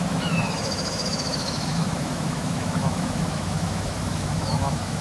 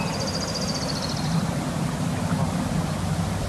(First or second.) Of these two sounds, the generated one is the first